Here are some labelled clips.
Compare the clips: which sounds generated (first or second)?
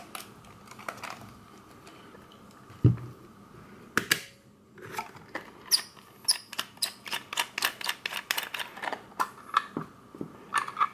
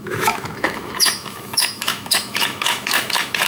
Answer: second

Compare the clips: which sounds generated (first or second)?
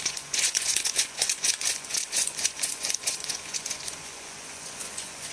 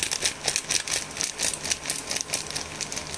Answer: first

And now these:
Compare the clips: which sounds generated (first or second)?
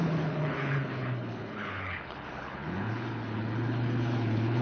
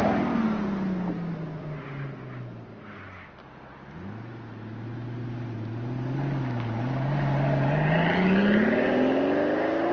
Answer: first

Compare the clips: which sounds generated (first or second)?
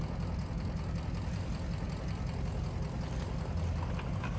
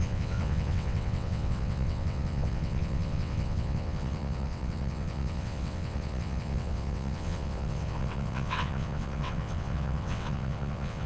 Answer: second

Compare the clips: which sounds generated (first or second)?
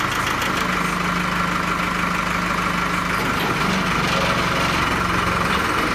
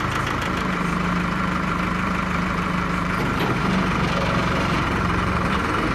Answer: second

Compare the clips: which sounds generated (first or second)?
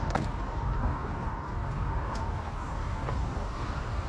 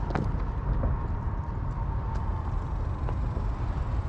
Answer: first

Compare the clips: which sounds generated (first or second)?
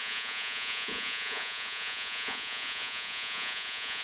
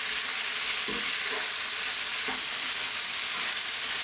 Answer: first